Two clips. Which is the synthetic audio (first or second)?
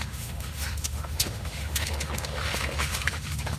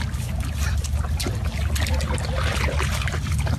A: first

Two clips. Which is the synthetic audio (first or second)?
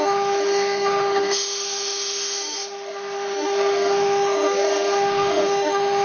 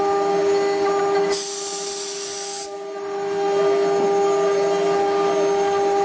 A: first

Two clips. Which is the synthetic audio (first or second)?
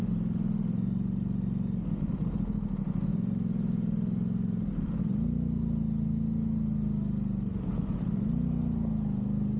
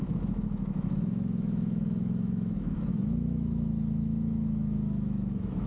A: second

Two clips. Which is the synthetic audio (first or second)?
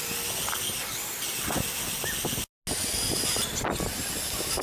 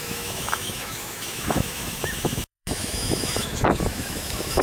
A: second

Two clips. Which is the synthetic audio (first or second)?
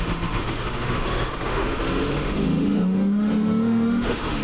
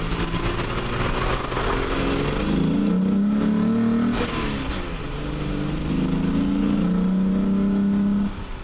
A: first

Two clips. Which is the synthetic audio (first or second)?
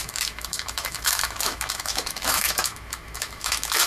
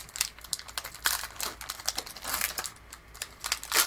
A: first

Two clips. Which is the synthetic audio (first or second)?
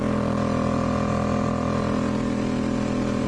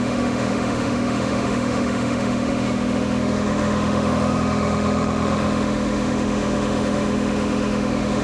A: second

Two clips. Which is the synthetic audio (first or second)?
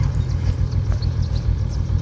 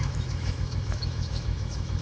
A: second